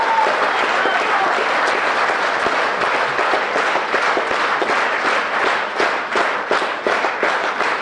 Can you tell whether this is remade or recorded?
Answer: recorded